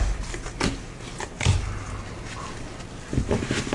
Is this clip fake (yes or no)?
no